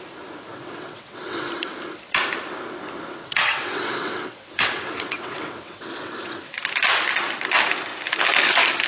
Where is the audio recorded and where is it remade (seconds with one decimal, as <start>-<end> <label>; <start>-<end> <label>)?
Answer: 0.0-0.5 recorded; 0.5-1.5 remade; 1.5-3.2 recorded; 3.2-6.6 remade; 6.6-8.9 recorded